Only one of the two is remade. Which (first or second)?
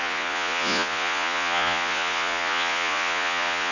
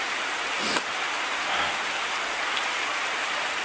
first